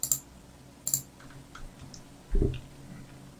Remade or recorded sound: recorded